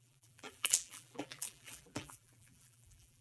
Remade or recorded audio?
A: remade